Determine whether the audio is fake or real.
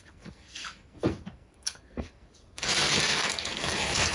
fake